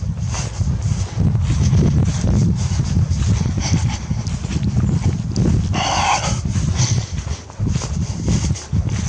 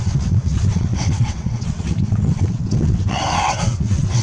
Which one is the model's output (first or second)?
second